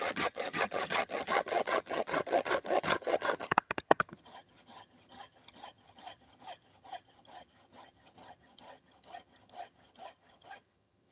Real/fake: fake